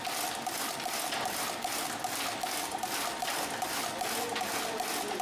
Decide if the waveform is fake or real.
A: real